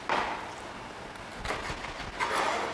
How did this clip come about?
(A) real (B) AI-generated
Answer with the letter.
A